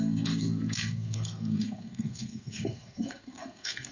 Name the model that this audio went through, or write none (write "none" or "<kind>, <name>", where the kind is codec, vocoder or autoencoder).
codec, SNAC